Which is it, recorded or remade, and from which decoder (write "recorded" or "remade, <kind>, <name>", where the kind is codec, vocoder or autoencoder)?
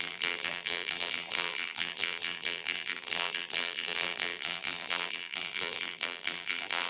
remade, vocoder, BigVGAN v2